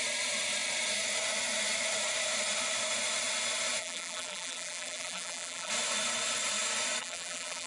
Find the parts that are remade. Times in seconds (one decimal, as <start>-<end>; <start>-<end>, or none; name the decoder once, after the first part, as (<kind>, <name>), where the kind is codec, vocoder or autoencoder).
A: 3.8-5.7 (vocoder, BigVGAN v2); 7.0-7.7